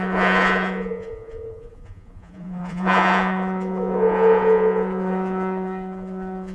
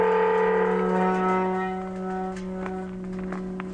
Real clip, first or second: second